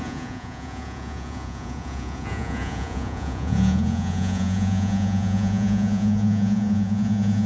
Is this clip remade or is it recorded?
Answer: remade